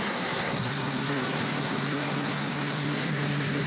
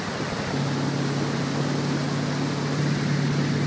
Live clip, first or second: second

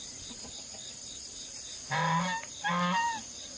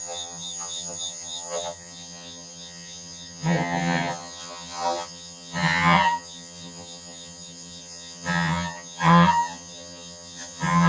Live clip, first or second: first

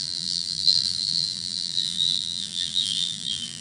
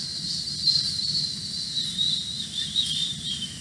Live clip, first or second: second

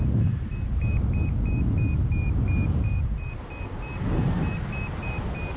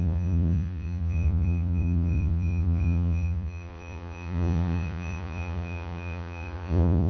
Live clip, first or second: first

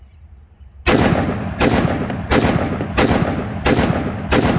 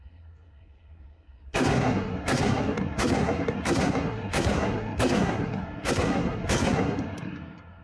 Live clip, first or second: first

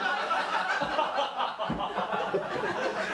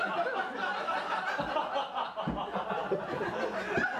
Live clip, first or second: second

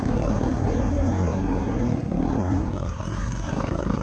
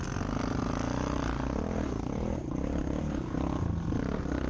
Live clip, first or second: second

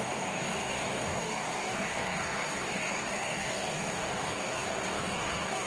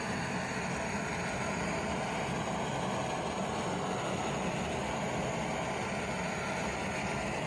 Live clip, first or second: second